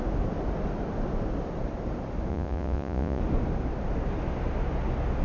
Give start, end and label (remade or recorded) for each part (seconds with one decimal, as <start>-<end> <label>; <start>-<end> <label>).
0.0-2.3 recorded; 2.3-3.2 remade; 3.2-5.2 recorded

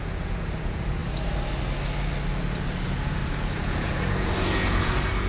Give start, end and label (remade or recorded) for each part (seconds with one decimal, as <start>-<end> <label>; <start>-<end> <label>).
0.0-1.0 remade; 1.0-2.8 recorded; 2.8-5.3 remade

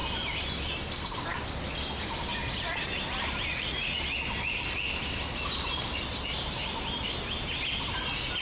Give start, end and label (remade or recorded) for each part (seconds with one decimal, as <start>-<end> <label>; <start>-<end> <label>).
0.0-3.5 recorded; 3.5-4.0 remade; 4.0-8.4 recorded

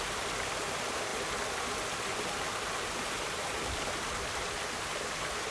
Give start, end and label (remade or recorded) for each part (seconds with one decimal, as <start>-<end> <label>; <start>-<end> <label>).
0.0-5.5 recorded